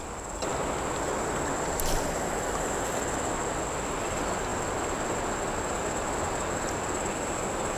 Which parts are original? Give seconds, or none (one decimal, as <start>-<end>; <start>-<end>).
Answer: 0.0-7.8